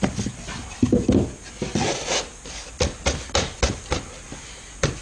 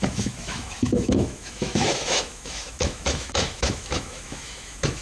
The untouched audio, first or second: first